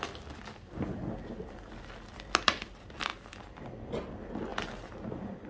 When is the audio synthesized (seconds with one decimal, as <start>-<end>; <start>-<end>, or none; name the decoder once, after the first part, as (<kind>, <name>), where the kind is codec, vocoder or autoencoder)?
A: none